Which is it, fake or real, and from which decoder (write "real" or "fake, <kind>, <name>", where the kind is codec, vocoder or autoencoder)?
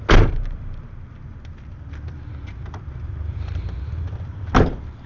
real